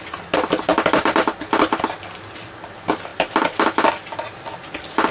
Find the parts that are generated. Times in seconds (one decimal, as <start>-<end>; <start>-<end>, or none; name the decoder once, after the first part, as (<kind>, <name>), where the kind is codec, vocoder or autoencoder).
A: 0.7-1.5 (vocoder, BigVGAN v2); 3.1-3.9